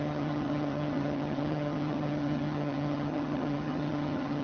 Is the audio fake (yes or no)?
yes